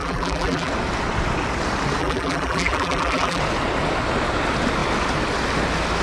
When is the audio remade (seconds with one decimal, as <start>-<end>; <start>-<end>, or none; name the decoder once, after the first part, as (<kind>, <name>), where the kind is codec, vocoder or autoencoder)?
0.0-0.7 (vocoder, BigVGAN v2); 2.0-3.4